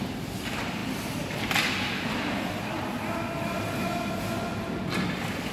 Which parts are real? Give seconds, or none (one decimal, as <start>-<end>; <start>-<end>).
0.0-5.5